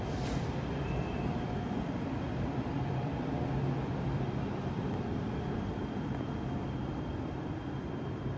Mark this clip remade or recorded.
remade